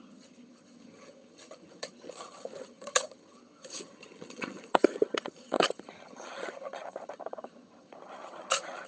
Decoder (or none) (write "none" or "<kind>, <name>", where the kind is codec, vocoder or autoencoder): vocoder, HiFi-GAN